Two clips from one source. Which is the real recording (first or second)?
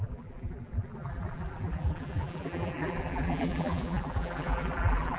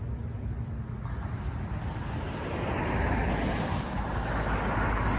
second